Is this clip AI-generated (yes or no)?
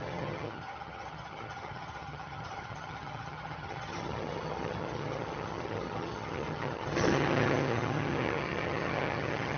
yes